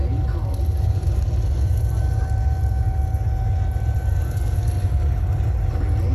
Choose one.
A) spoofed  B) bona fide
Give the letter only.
B